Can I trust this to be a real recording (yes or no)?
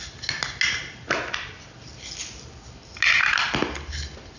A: yes